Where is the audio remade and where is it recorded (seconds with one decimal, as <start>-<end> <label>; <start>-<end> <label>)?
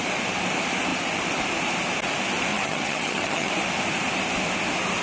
0.0-2.5 recorded; 2.5-3.5 remade; 3.5-5.0 recorded